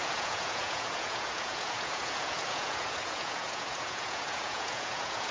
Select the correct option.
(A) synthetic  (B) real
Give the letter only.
A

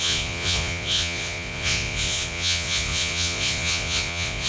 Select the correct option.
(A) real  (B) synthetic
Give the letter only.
B